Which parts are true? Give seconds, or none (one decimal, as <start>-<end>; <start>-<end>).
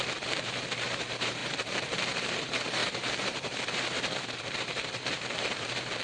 none